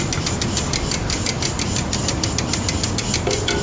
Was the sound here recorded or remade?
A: recorded